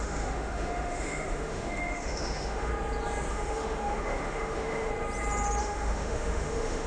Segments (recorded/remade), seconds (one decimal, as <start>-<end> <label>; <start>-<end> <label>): 0.0-2.7 remade; 2.7-3.3 recorded; 3.3-4.9 remade; 4.9-5.6 recorded; 5.6-6.9 remade